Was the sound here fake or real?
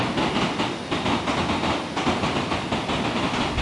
real